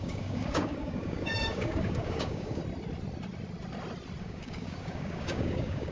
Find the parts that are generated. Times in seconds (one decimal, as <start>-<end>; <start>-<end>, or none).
0.0-2.6; 4.2-5.9